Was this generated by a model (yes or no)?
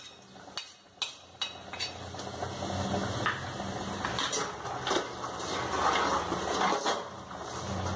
no